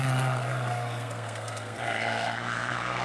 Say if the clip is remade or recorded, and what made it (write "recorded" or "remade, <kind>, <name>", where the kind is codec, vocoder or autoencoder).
remade, codec, SNAC